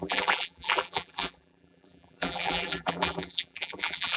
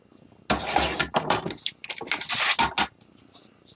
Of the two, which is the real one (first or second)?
second